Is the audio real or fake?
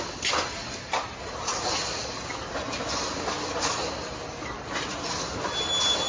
real